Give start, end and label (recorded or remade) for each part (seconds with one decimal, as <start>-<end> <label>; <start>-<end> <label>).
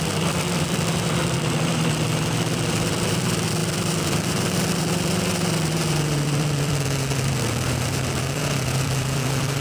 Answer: 0.0-9.6 remade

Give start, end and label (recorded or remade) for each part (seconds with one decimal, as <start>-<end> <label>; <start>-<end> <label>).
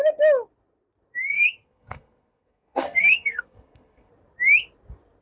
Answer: 0.0-1.3 recorded; 1.3-4.1 remade; 4.1-5.2 recorded